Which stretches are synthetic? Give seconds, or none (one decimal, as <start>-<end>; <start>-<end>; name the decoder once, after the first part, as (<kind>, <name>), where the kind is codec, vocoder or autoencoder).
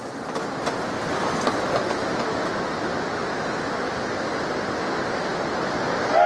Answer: none